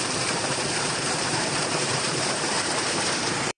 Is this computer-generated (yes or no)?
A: yes